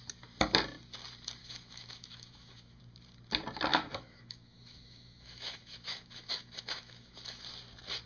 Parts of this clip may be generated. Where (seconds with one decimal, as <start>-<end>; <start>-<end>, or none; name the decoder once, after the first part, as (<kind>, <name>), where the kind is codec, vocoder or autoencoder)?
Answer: 1.4-2.8 (autoencoder, DAC-VAE); 3.7-7.4